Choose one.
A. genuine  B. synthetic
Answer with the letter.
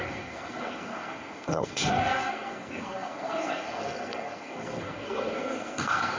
B